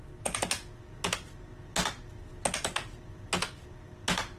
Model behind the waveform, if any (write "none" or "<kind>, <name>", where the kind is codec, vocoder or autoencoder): none